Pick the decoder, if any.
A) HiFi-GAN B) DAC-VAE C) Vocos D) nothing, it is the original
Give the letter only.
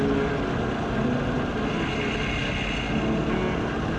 D